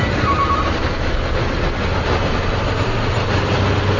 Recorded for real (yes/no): yes